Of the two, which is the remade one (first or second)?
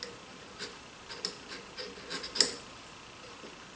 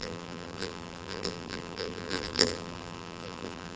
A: second